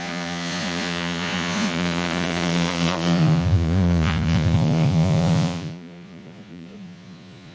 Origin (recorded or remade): remade